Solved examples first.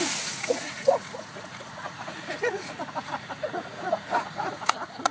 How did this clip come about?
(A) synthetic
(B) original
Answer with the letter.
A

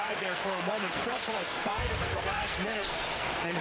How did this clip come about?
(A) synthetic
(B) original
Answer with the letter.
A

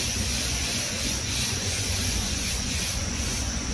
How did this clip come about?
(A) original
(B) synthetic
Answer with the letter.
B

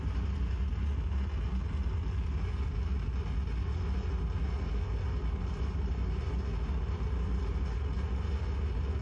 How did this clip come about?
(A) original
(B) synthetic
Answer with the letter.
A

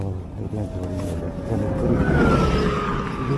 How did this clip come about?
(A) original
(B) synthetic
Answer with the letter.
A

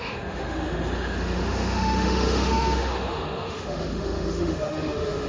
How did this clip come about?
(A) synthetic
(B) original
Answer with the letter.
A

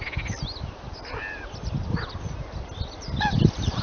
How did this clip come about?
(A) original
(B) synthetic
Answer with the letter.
A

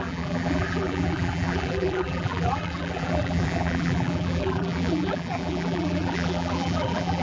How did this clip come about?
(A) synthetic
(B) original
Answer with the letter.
A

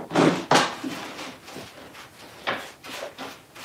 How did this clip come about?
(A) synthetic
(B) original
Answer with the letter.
B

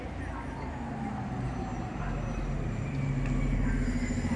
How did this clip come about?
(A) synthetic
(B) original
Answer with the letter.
B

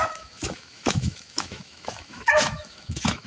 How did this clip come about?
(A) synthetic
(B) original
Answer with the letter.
A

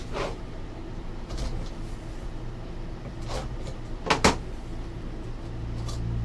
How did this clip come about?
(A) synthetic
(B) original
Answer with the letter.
B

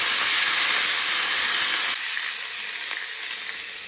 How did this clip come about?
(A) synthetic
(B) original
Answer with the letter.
B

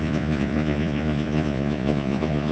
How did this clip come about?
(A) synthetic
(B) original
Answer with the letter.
A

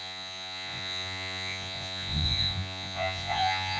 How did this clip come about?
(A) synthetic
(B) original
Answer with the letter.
A